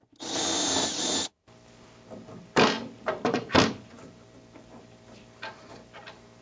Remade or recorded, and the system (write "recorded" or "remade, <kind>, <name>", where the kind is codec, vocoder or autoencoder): recorded